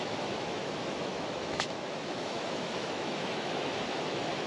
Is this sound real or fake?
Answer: fake